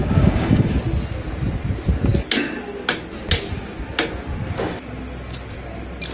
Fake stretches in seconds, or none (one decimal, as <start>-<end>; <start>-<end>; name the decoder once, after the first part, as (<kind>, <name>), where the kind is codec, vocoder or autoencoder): 0.0-0.7 (codec, DAC)